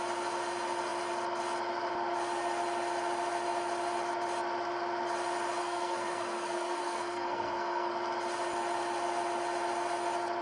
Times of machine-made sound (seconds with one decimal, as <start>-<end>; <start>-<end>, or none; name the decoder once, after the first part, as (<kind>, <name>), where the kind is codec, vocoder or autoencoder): 5.6-7.9 (codec, SNAC)